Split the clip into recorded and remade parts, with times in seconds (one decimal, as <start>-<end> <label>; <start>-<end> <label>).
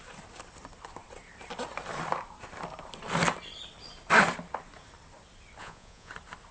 0.0-5.6 recorded; 5.6-6.1 remade; 6.1-6.5 recorded